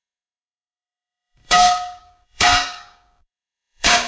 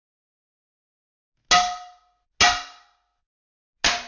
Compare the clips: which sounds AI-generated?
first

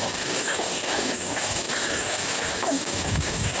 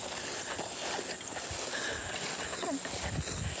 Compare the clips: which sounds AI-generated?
first